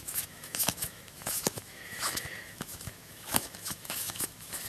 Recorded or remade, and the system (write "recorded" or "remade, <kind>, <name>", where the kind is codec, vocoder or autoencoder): remade, autoencoder, DAC-VAE